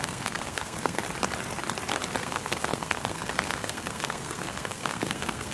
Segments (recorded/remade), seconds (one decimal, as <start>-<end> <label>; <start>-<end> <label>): 0.0-1.0 remade; 1.0-2.2 recorded; 2.2-5.5 remade